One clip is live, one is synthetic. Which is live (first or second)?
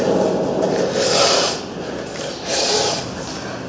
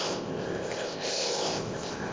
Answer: first